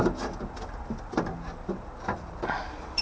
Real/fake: real